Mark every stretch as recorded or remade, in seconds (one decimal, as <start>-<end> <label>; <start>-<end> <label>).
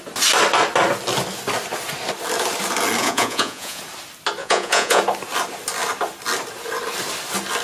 0.0-3.0 recorded; 3.0-3.8 remade; 3.8-4.4 recorded; 4.4-5.0 remade; 5.0-7.6 recorded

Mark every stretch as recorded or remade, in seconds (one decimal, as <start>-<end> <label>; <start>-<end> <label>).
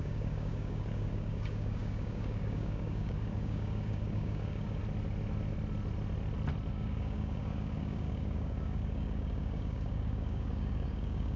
0.0-4.8 remade; 4.8-6.7 recorded; 6.7-11.4 remade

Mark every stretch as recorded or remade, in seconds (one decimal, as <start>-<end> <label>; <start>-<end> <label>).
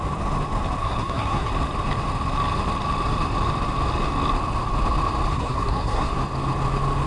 0.0-0.8 recorded; 0.8-1.5 remade; 1.5-5.3 recorded; 5.3-6.1 remade; 6.1-7.1 recorded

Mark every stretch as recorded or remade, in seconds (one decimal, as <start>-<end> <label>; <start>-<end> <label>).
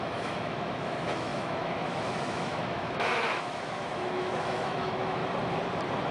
0.0-5.2 remade; 5.2-6.1 recorded